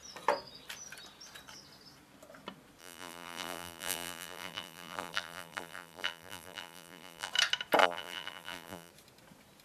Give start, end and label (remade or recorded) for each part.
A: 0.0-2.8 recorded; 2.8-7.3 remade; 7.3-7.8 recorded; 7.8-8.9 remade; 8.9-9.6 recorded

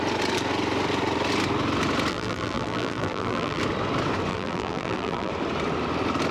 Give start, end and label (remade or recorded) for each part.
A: 0.0-2.1 recorded; 2.1-3.6 remade; 3.6-4.3 recorded; 4.3-5.3 remade; 5.3-6.3 recorded

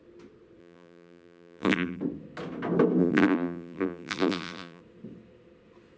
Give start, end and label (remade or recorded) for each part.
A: 0.0-0.6 recorded; 0.6-2.0 remade; 2.0-3.0 recorded; 3.0-4.8 remade; 4.8-6.0 recorded

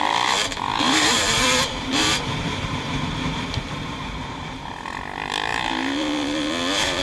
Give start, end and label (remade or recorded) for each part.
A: 0.0-0.7 recorded; 0.7-4.7 remade; 4.7-7.0 recorded

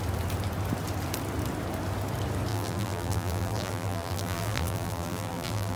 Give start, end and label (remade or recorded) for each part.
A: 0.0-2.5 recorded; 2.5-5.8 remade

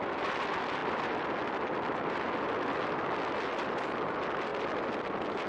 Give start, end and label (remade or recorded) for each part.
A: 0.0-5.5 recorded

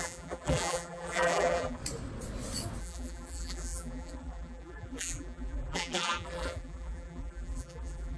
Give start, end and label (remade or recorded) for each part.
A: 0.0-1.8 remade; 1.8-2.8 recorded; 2.8-8.2 remade